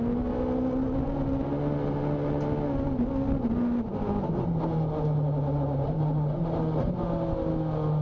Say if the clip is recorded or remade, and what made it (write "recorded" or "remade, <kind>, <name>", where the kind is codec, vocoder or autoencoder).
recorded